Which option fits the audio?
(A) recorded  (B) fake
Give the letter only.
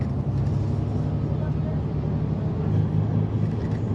A